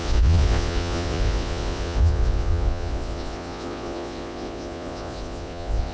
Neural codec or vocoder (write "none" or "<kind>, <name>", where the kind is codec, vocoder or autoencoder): vocoder, Vocos